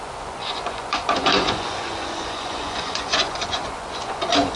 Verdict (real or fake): fake